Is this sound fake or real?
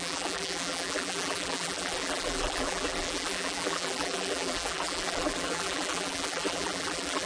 fake